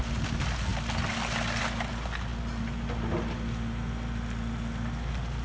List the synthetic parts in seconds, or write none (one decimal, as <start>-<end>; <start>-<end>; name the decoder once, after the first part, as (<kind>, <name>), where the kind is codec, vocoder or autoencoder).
none